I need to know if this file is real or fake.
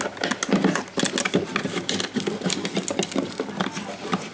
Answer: real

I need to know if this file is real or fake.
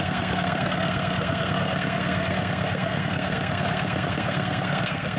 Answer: fake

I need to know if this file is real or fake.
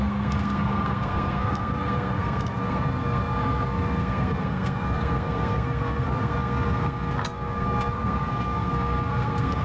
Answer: fake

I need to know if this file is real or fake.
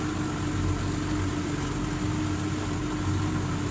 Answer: real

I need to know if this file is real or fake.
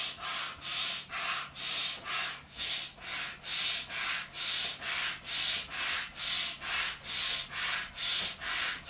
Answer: real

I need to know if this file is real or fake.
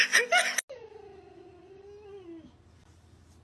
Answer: real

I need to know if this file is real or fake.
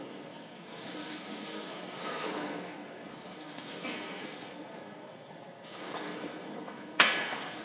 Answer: fake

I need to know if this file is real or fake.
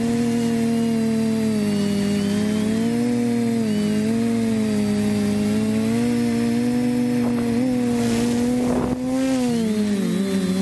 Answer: real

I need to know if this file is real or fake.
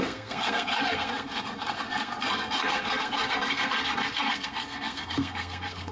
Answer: fake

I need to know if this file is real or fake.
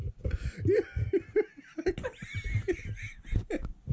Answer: real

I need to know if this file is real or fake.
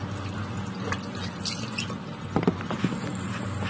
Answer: real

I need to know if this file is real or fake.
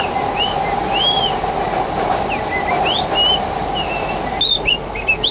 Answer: real